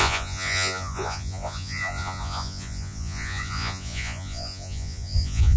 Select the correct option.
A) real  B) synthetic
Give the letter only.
B